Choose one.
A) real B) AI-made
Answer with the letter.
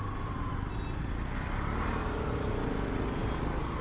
A